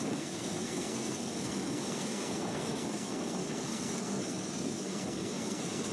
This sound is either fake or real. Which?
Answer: fake